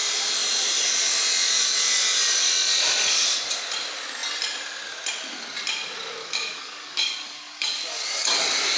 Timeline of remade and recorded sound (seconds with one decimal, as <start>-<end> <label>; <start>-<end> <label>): 0.0-6.2 recorded; 6.2-8.4 remade; 8.4-8.8 recorded

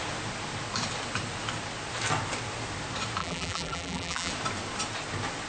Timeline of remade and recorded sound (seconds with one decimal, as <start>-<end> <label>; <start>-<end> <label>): 0.0-3.2 recorded; 3.2-4.3 remade; 4.3-5.5 recorded